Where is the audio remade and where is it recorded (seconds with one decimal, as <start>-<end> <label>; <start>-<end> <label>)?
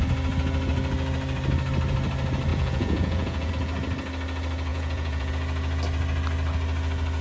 0.0-2.5 recorded; 2.5-3.5 remade; 3.5-4.7 recorded; 4.7-5.3 remade; 5.3-7.2 recorded